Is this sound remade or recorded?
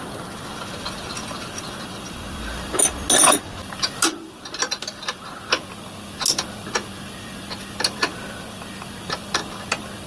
recorded